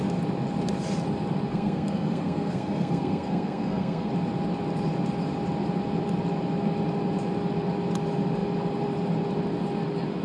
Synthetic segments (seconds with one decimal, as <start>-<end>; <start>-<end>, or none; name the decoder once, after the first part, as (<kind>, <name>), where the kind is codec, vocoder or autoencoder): 1.5-4.1 (codec, SNAC)